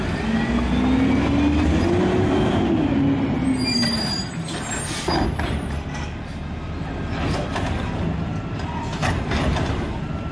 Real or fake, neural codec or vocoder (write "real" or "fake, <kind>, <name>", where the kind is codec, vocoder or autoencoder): real